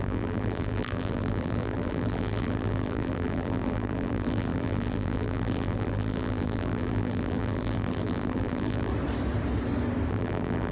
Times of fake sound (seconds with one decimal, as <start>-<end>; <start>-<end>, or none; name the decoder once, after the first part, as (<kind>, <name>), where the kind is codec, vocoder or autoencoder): 0.0-8.9 (vocoder, BigVGAN v2); 10.1-10.7